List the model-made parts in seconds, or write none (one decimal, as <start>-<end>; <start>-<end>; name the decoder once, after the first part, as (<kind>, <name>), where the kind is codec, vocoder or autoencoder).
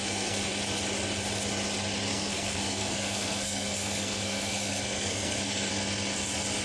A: 0.0-0.5 (codec, SNAC); 2.1-5.7